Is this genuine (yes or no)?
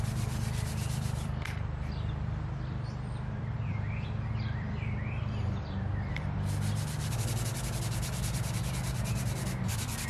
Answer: no